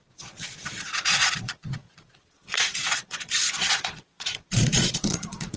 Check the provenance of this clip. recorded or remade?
remade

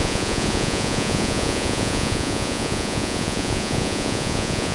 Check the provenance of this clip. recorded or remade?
remade